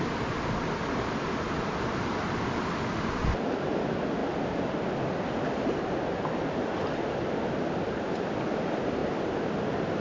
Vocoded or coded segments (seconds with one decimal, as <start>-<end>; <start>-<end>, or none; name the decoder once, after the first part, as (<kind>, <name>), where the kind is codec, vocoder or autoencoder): none